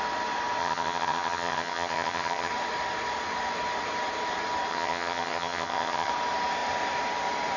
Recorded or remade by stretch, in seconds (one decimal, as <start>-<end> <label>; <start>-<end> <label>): 0.0-0.6 recorded; 0.6-2.5 remade; 2.5-4.7 recorded; 4.7-6.1 remade; 6.1-7.6 recorded